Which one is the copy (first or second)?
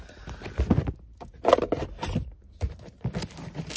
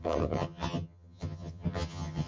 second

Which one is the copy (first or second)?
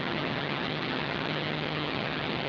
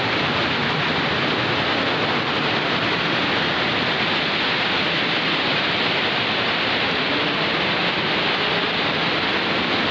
first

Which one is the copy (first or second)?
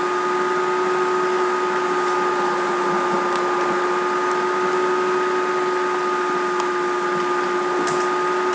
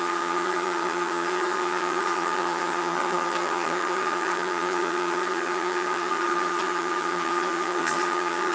second